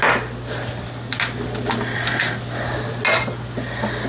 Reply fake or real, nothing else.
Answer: real